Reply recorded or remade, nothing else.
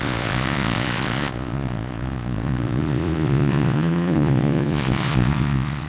remade